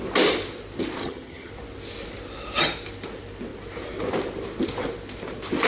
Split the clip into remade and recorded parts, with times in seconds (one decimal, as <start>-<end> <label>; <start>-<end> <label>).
0.0-1.0 recorded; 1.0-1.5 remade; 1.5-5.7 recorded